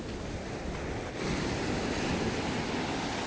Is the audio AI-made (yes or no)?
no